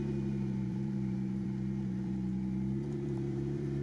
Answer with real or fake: fake